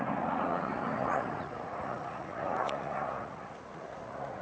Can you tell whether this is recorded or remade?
remade